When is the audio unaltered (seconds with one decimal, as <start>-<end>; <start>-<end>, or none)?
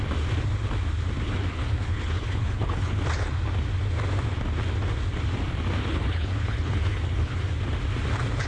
0.0-1.5; 3.0-5.8; 7.4-8.5